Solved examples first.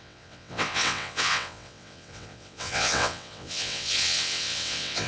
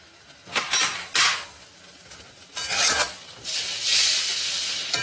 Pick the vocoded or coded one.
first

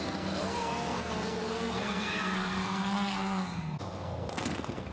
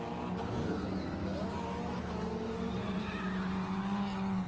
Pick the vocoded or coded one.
first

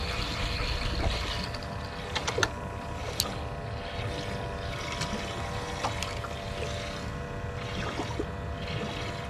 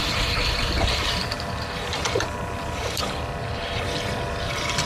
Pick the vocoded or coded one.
second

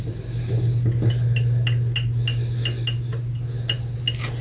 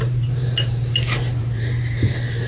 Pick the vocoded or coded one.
second